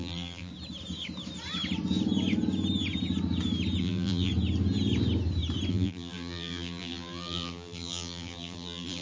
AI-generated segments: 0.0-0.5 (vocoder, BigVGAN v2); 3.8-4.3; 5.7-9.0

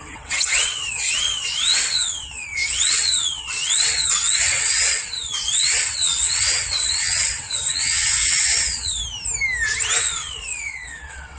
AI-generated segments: 0.0-9.0 (vocoder, WaveNeXt); 10.0-11.4

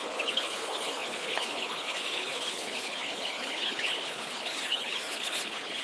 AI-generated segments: 0.0-5.8 (codec, HILCodec)

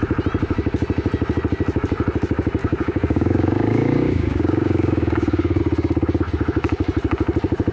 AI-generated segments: 2.6-5.6 (codec, DAC)

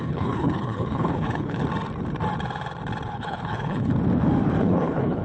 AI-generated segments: 0.0-1.6 (codec, HILCodec); 3.1-3.9; 4.6-5.2

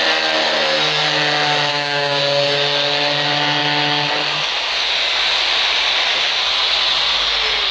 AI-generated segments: 1.7-2.2 (codec, DAC)

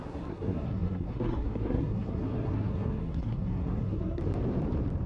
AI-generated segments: 0.0-4.2 (codec, SNAC)

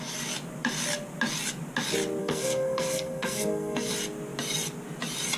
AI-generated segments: 2.2-3.9 (codec, SNAC)